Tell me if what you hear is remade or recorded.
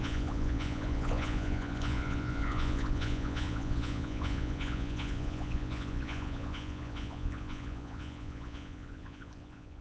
remade